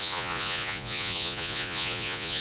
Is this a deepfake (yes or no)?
yes